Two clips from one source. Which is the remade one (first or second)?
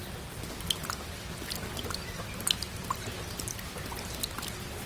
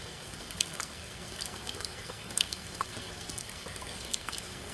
second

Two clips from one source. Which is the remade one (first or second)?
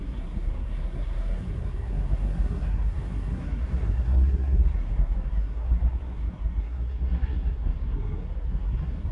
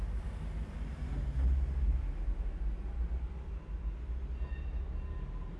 first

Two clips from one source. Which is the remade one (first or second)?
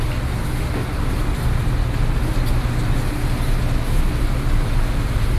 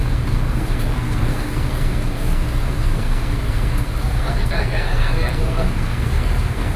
second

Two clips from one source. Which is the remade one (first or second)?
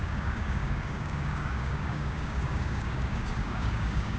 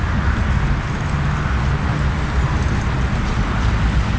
first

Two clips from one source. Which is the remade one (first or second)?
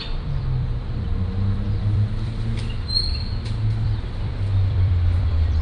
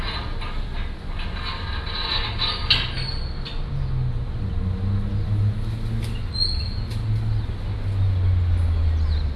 first